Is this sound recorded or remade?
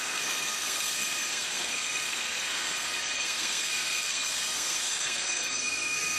remade